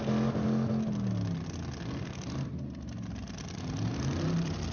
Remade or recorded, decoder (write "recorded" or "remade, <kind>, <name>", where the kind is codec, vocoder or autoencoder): recorded